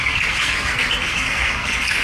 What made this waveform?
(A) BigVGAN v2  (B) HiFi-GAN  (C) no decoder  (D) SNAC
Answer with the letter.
D